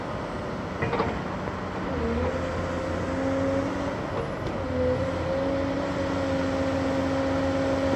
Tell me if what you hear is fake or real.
real